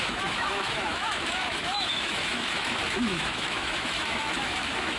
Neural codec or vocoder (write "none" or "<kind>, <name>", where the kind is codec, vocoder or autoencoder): autoencoder, DAC-VAE